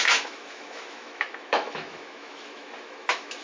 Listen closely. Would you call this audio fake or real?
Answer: fake